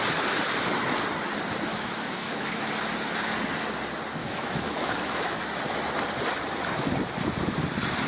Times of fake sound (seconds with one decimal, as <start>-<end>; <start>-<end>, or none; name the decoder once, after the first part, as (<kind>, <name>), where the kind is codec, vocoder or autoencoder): 1.7-2.7 (autoencoder, DAC-VAE); 4.2-5.6